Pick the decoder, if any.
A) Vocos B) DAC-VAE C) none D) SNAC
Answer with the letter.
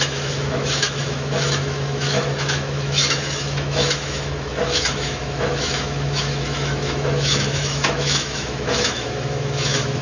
B